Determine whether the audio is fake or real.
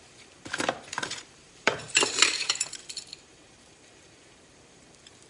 fake